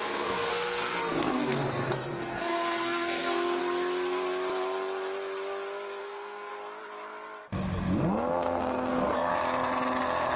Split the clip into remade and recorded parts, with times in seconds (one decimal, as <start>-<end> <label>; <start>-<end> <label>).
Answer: 0.0-3.6 remade; 3.6-6.0 recorded; 6.0-6.5 remade; 6.5-8.3 recorded; 8.3-9.3 remade; 9.3-10.4 recorded